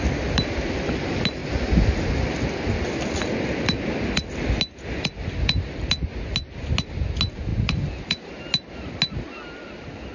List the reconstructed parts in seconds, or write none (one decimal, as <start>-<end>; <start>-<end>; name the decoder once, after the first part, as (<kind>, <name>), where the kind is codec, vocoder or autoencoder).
none